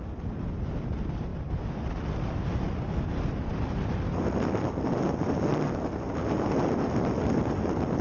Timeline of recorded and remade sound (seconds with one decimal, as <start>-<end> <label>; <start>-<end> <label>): 0.0-8.0 recorded